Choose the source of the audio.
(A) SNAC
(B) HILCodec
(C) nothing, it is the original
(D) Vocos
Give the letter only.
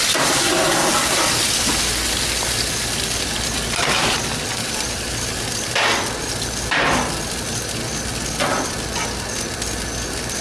C